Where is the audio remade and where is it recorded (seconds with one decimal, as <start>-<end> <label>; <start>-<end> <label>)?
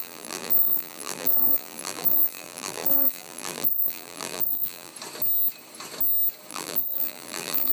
0.0-4.9 remade; 4.9-6.5 recorded; 6.5-7.7 remade